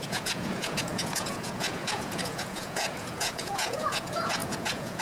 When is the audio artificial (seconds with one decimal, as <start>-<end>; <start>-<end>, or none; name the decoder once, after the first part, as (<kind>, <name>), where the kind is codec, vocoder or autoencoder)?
0.0-5.0 (vocoder, Vocos)